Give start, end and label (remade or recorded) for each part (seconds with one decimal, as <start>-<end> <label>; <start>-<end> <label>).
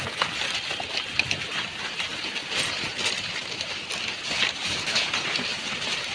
0.0-4.6 recorded; 4.6-5.4 remade; 5.4-6.1 recorded